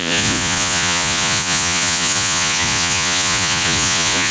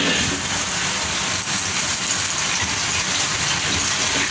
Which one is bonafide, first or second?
second